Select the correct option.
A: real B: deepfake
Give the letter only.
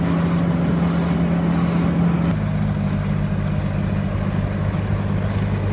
A